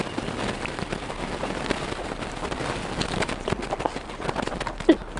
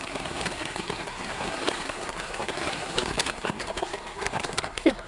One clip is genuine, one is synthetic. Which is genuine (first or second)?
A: first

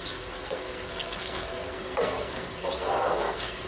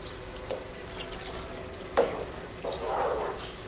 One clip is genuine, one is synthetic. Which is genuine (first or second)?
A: second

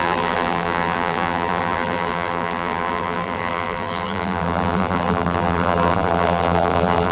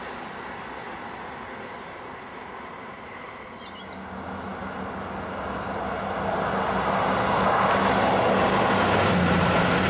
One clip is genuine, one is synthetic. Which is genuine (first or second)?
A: second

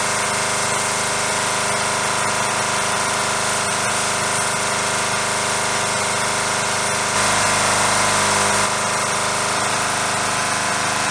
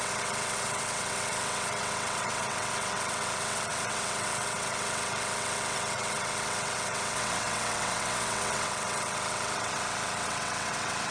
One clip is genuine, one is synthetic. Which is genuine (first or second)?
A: first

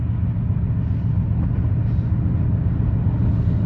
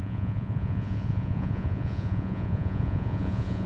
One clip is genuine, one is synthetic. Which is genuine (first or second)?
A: first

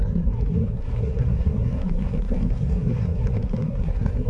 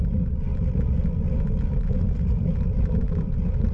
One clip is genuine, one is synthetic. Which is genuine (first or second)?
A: second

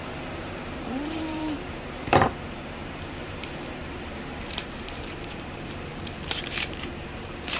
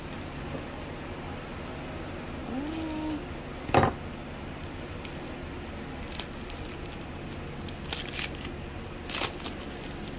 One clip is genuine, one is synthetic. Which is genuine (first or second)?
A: second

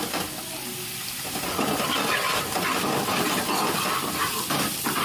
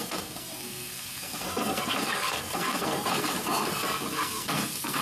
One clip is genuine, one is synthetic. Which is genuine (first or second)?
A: first